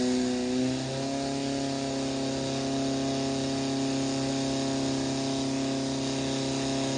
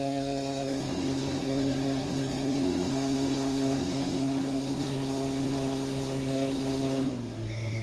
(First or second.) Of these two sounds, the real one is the first